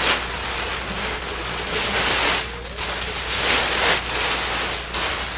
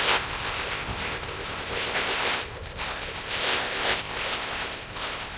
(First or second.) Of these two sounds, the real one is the first